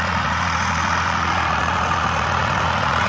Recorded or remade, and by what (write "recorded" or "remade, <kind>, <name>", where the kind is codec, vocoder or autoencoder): remade, vocoder, Vocos